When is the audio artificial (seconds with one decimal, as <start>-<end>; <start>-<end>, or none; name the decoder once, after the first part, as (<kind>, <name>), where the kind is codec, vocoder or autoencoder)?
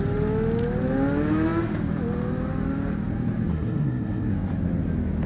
3.5-4.3 (codec, SNAC)